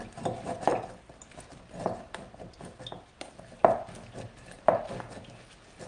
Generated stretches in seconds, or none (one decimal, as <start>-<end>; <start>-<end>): none